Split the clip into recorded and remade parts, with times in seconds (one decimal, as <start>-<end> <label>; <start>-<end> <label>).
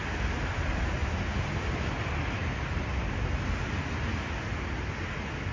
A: 0.0-5.5 recorded